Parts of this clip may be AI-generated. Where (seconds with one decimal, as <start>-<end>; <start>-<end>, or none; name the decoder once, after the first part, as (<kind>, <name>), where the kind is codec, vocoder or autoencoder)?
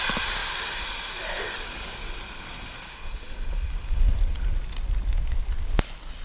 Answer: 2.9-3.5 (codec, SNAC)